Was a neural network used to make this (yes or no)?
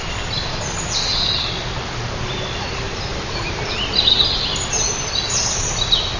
no